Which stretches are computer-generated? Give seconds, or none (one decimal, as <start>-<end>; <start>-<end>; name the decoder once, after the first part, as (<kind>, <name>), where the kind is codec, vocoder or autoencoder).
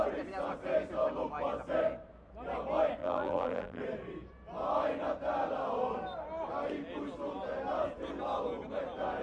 3.0-3.8 (vocoder, BigVGAN v2)